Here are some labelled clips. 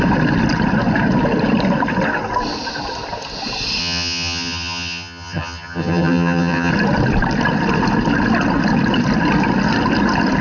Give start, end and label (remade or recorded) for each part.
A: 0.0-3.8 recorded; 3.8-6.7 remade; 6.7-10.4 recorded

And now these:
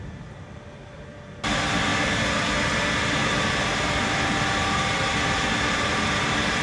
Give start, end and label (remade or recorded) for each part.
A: 0.0-6.6 recorded

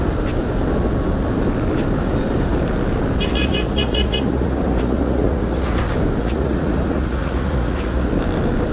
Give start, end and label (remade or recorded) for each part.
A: 0.0-3.3 recorded; 3.3-5.8 remade; 5.8-6.2 recorded; 6.2-8.1 remade; 8.1-8.7 recorded

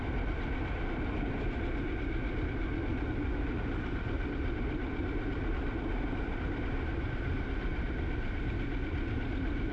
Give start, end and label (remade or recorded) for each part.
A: 0.0-9.7 recorded